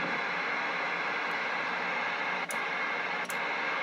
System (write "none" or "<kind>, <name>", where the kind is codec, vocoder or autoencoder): none